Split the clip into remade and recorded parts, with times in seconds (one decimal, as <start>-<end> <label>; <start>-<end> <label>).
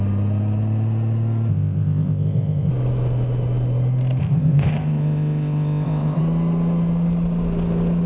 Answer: 0.0-1.5 recorded; 1.5-2.7 remade; 2.7-4.2 recorded; 4.2-6.2 remade; 6.2-8.1 recorded